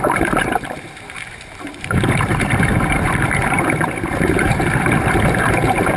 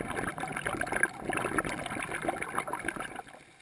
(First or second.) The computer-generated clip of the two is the first